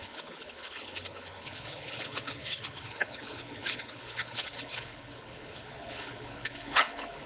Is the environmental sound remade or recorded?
remade